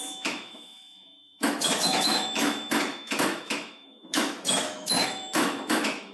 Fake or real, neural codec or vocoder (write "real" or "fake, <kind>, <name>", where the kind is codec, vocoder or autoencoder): fake, autoencoder, DAC-VAE